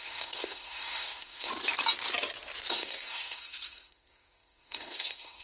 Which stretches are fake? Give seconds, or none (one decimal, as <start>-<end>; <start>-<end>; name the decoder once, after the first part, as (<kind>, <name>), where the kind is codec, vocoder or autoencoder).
0.0-1.5 (codec, SNAC); 2.7-5.4